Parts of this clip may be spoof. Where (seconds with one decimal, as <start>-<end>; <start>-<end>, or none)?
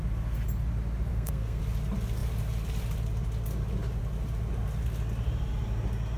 1.1-1.6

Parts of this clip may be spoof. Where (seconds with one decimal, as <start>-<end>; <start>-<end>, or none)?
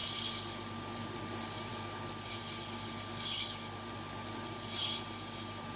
none